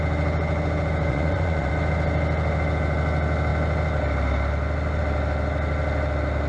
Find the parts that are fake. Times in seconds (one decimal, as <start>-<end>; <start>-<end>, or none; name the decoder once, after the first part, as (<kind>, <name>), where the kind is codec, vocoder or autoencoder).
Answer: 1.1-1.7 (vocoder, Vocos)